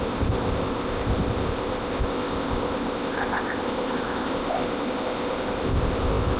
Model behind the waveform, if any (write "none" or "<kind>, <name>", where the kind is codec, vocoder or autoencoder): codec, ZipCodec